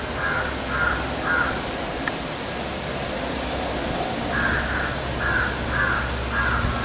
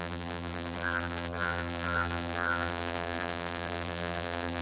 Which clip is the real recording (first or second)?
first